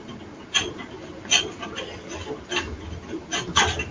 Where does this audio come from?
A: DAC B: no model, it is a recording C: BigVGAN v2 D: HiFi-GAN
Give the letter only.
B